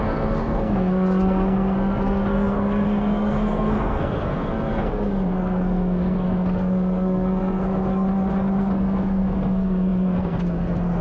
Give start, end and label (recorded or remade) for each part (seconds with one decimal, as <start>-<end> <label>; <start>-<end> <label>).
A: 0.0-7.9 remade; 7.9-8.6 recorded; 8.6-11.0 remade